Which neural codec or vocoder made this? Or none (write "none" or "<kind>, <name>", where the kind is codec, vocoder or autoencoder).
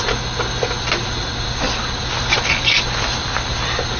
none